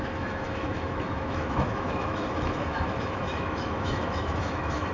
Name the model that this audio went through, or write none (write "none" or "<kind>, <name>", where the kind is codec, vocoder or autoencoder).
autoencoder, DAC-VAE